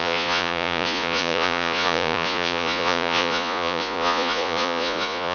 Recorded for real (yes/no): no